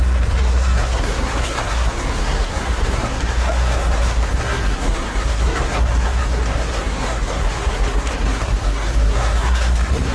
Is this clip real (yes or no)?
no